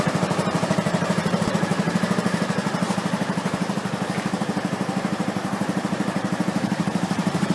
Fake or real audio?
fake